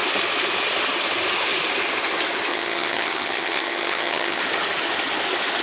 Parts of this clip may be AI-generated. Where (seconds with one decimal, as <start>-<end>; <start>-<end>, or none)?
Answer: 2.5-4.4